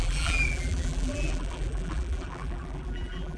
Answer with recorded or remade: remade